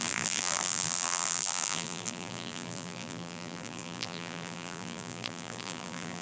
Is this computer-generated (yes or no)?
yes